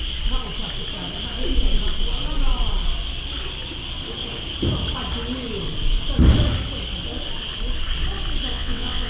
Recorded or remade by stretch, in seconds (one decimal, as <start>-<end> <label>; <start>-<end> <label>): 0.0-8.5 recorded; 8.5-9.1 remade